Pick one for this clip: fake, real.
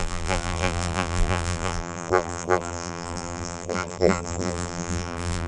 fake